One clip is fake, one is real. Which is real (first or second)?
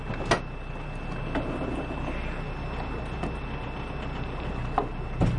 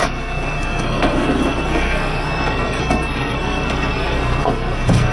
first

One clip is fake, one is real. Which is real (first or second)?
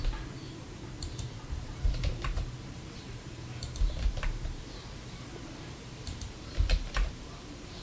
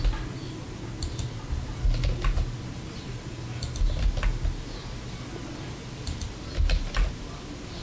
second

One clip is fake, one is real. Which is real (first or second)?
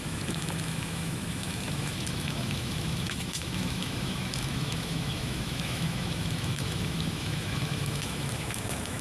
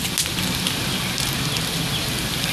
second